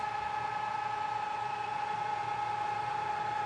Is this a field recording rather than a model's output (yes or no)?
no